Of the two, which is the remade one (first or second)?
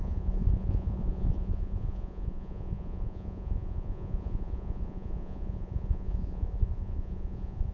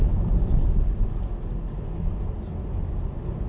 first